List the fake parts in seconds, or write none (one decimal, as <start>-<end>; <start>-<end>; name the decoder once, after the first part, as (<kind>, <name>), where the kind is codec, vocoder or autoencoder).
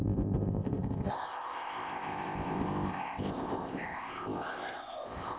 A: 0.0-5.4 (codec, ZipCodec)